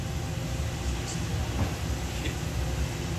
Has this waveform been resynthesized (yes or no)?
no